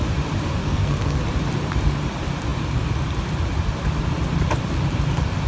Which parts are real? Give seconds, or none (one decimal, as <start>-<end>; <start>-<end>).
0.0-0.6; 1.2-5.5